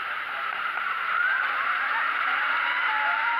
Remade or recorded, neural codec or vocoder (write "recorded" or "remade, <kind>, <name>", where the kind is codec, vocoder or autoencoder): remade, vocoder, BigVGAN v2